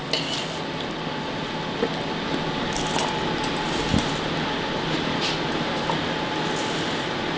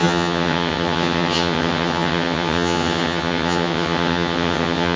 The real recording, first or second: first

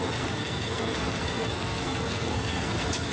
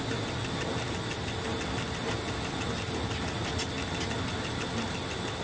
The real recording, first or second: second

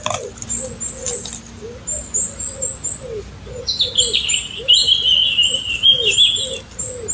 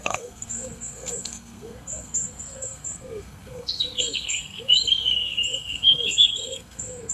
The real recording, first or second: first